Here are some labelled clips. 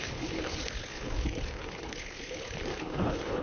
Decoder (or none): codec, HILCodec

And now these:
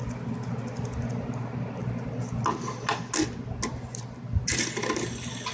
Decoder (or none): none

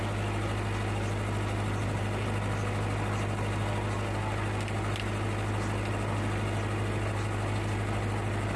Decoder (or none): none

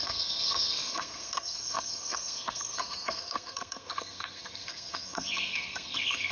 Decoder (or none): codec, SNAC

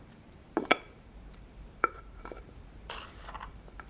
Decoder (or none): vocoder, BigVGAN v2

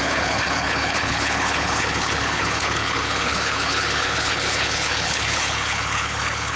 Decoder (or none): codec, HILCodec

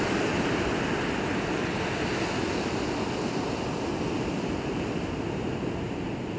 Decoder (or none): none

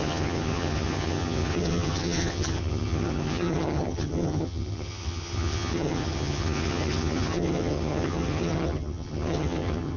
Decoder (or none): vocoder, HiFi-GAN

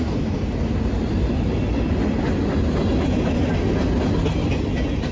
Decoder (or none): none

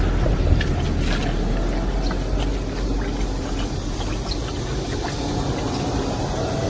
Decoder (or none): none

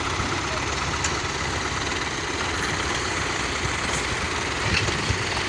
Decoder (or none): none